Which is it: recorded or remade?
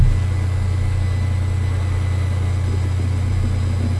recorded